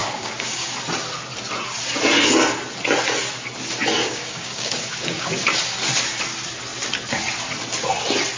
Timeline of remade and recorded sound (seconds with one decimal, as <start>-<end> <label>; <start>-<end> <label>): 0.0-0.7 remade; 0.7-4.0 recorded; 4.0-5.3 remade; 5.3-8.4 recorded